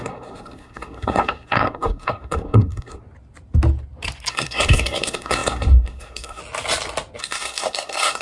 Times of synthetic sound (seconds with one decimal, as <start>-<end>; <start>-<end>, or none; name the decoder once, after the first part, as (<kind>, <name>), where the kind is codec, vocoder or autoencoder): 0.0-3.0 (codec, SNAC); 4.3-6.4; 7.2-8.2